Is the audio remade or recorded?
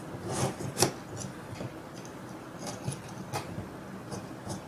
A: recorded